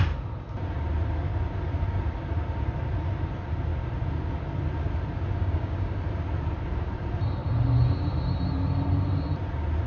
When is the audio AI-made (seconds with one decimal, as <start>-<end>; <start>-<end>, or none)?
5.4-5.9